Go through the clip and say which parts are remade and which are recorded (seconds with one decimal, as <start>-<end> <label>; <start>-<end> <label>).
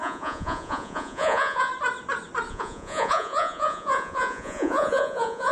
0.0-1.7 remade; 1.7-2.5 recorded; 2.5-5.5 remade